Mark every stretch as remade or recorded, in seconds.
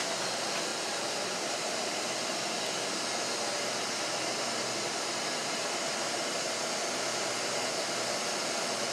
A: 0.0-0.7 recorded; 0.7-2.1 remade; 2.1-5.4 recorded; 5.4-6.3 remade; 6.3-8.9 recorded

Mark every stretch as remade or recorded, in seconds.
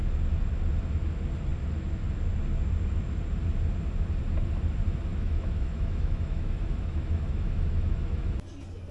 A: 0.0-5.1 recorded; 5.1-8.3 remade; 8.3-8.9 recorded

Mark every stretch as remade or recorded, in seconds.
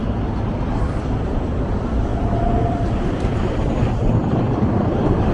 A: 0.0-0.8 recorded; 0.8-2.1 remade; 2.1-2.7 recorded; 2.7-5.3 remade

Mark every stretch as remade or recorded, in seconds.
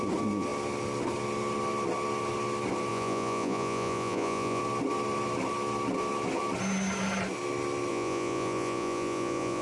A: 0.0-2.9 recorded; 2.9-4.6 remade; 4.6-7.9 recorded; 7.9-9.6 remade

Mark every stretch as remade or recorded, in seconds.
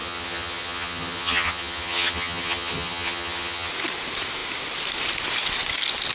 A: 0.0-3.7 remade; 3.7-6.1 recorded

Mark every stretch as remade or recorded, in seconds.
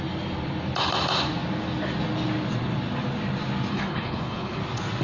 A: 0.0-3.7 recorded; 3.7-4.6 remade; 4.6-5.0 recorded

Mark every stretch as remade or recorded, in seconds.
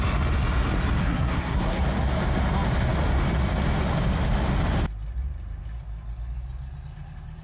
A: 0.0-1.0 recorded; 1.0-1.8 remade; 1.8-7.4 recorded